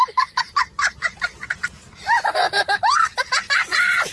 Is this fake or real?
fake